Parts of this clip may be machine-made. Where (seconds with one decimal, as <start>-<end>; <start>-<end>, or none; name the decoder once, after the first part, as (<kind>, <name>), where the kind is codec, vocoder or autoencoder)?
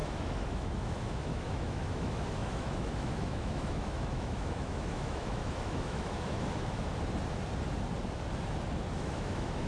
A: 0.0-6.9 (autoencoder, DAC-VAE); 9.0-9.7